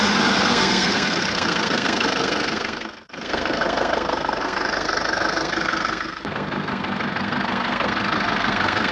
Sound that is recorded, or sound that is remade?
remade